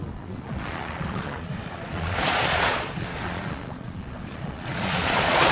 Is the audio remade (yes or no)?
yes